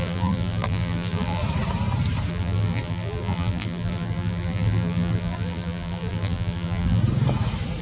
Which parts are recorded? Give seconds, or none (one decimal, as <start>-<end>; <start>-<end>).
1.4-2.3; 7.0-7.8